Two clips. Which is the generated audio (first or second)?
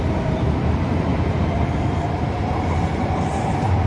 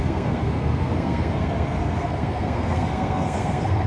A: second